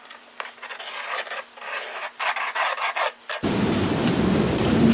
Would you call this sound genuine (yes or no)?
yes